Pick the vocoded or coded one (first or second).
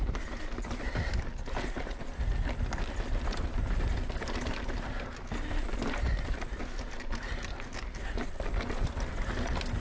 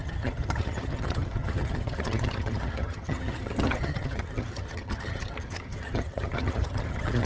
second